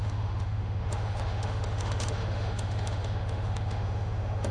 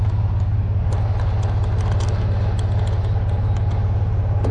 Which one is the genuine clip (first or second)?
second